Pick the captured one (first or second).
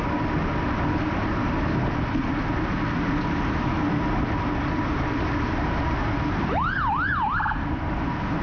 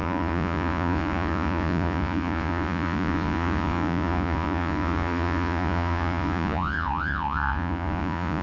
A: first